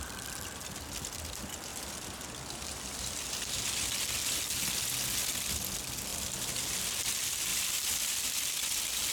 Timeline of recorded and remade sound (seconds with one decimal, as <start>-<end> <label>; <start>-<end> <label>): 0.0-1.7 recorded; 1.7-4.4 remade; 4.4-7.5 recorded; 7.5-8.1 remade; 8.1-9.1 recorded